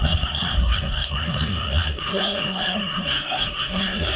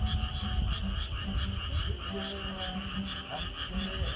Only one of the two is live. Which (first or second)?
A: second